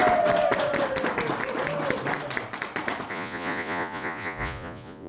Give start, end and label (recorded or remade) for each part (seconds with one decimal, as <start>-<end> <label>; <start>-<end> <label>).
0.0-3.1 recorded; 3.1-5.1 remade